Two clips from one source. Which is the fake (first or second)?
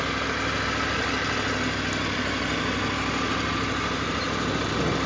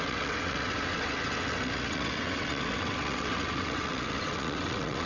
second